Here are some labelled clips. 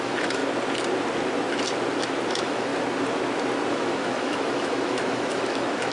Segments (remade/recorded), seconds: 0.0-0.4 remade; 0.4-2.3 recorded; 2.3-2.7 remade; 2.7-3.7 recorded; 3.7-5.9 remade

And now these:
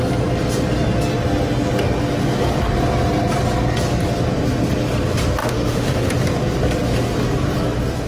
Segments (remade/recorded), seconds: 0.0-5.4 recorded; 5.4-6.1 remade; 6.1-8.1 recorded

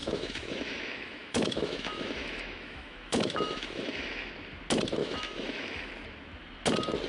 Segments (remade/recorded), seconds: 0.0-4.3 remade; 4.3-5.0 recorded; 5.0-5.9 remade; 5.9-7.1 recorded

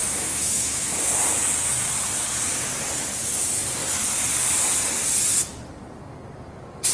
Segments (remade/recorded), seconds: 0.0-1.1 remade; 1.1-6.9 recorded